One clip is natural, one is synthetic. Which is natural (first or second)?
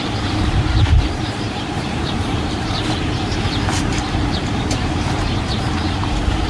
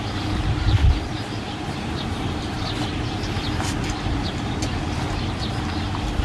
second